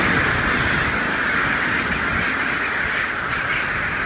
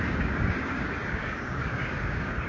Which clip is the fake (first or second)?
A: second